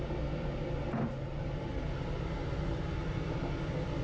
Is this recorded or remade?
recorded